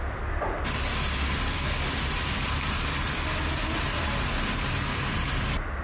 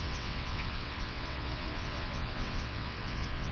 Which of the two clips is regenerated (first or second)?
second